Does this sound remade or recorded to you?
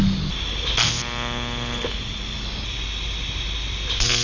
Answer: recorded